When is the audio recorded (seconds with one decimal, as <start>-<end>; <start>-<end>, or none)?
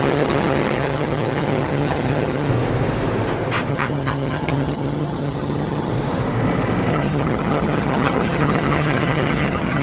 2.5-3.7; 5.9-6.9